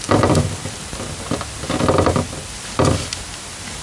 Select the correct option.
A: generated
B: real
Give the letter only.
B